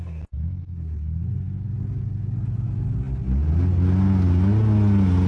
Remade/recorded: recorded